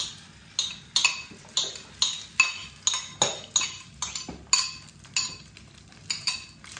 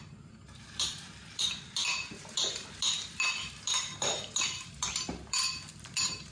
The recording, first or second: first